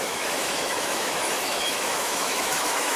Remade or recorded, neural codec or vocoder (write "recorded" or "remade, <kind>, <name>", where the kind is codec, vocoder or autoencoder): remade, autoencoder, DAC-VAE